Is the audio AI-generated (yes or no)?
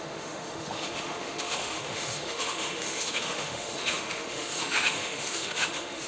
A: yes